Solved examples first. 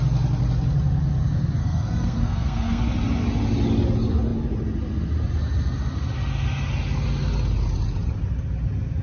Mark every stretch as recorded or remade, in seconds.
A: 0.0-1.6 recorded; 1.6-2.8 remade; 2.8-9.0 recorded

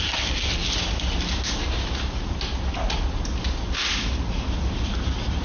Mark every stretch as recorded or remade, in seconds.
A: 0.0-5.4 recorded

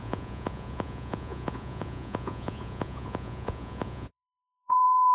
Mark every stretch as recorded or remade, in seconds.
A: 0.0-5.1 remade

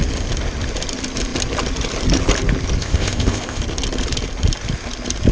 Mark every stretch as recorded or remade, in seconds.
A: 0.0-2.8 recorded; 2.8-3.6 remade; 3.6-5.3 recorded